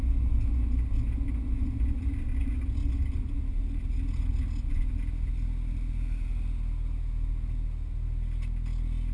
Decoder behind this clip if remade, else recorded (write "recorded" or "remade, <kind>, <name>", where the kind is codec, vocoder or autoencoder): recorded